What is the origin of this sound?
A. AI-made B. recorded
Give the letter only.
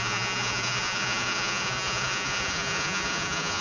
A